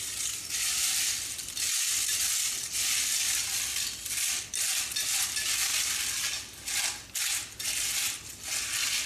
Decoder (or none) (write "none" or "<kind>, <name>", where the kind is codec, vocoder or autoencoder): none